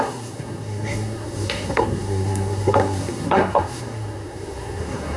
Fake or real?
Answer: fake